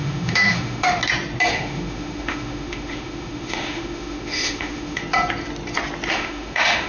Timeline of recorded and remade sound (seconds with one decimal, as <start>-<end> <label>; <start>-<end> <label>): 0.0-1.0 remade; 1.0-1.5 recorded; 1.5-5.0 remade; 5.0-6.1 recorded; 6.1-6.9 remade